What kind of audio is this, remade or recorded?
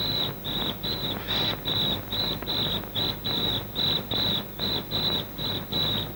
recorded